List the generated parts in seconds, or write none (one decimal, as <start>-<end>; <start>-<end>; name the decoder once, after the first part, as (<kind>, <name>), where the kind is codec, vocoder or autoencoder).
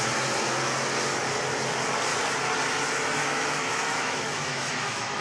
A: 3.2-5.2 (autoencoder, DAC-VAE)